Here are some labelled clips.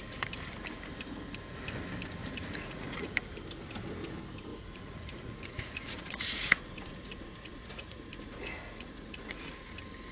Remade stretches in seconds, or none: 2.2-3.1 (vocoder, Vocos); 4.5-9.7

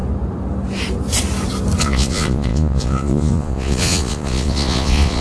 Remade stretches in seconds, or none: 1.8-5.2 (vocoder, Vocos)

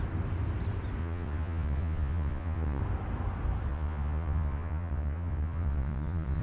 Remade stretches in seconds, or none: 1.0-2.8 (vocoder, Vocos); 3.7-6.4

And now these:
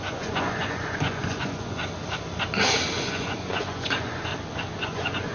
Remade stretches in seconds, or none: 0.0-1.8 (vocoder, Vocos); 3.0-4.3; 4.8-5.3

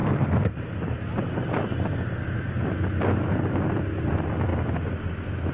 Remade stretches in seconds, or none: none

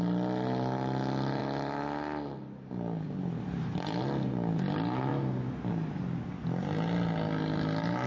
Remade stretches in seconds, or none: none

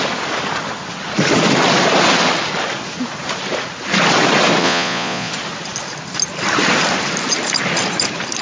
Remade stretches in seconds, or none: 4.6-5.3 (vocoder, Vocos)